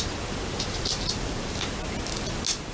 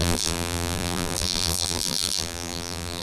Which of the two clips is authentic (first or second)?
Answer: first